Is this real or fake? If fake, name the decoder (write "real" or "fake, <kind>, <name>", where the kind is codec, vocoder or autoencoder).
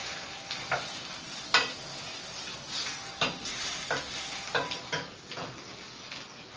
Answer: real